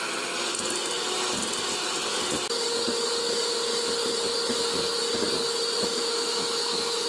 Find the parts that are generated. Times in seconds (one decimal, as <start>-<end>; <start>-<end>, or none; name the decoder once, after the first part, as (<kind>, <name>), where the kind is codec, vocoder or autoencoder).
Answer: 5.9-7.1 (autoencoder, DAC-VAE)

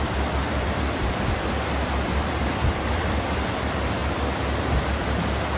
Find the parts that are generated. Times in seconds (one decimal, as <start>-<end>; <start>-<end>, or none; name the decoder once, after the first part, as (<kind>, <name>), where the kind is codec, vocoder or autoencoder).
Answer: 0.0-4.0 (vocoder, BigVGAN v2)